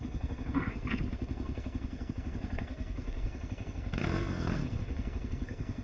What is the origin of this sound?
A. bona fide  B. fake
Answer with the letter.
B